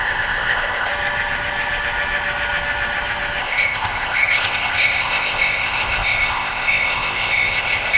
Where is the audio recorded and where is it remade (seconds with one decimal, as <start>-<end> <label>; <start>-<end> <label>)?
0.0-0.9 remade; 0.9-3.4 recorded; 3.4-8.0 remade